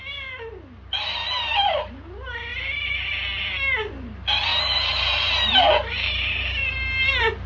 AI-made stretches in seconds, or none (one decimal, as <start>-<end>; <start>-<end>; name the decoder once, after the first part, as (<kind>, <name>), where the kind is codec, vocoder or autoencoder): none